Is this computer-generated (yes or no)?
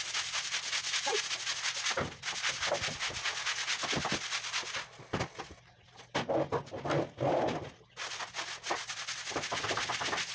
no